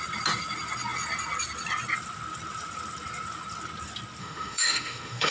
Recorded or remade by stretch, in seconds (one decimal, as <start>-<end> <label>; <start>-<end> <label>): 0.0-4.2 recorded; 4.2-5.3 remade